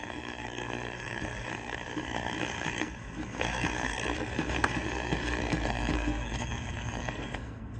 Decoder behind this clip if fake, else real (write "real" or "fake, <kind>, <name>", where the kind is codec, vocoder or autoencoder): fake, codec, SNAC